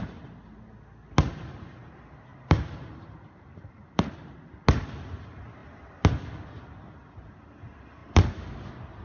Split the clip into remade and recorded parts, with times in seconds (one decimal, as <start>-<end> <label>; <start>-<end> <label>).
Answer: 0.0-2.3 recorded; 2.3-4.1 remade; 4.1-8.0 recorded; 8.0-8.6 remade; 8.6-9.0 recorded